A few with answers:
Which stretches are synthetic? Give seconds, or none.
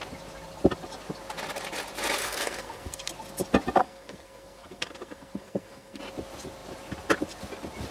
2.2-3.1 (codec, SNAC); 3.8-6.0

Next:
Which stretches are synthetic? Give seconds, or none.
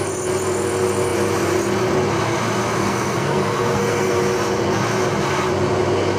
2.8-4.2 (codec, SNAC)